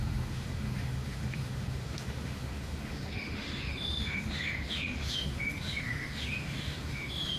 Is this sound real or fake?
fake